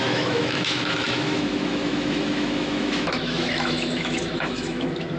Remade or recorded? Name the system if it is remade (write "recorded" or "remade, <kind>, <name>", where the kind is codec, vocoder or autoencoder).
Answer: remade, autoencoder, DAC-VAE